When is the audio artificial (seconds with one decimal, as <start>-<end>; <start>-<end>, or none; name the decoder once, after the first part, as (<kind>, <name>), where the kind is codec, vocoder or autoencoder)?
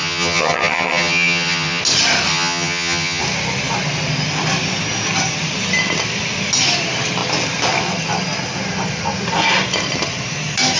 0.0-1.8 (vocoder, HiFi-GAN); 2.3-3.2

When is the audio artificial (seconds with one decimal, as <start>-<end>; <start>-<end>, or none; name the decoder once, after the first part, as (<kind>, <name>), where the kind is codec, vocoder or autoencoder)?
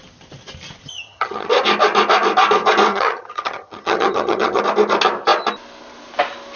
0.8-1.5 (vocoder, HiFi-GAN); 2.9-4.6